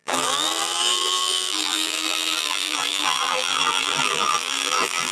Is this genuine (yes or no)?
no